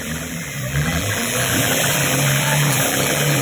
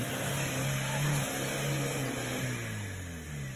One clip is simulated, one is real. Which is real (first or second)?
second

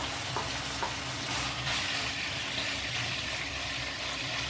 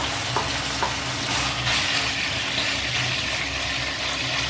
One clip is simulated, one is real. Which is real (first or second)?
second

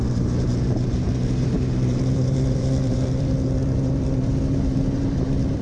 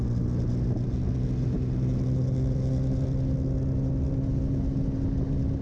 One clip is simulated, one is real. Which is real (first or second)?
second